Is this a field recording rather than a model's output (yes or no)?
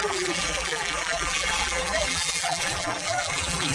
no